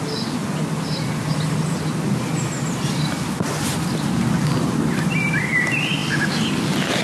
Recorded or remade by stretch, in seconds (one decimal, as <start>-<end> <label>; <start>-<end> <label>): 0.0-7.0 recorded